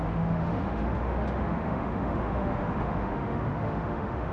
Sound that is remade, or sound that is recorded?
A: remade